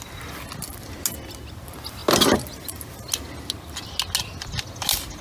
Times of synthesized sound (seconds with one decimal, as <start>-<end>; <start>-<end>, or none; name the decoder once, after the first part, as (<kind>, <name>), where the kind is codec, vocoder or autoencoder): none